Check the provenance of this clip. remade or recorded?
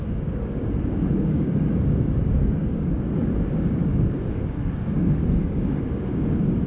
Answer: remade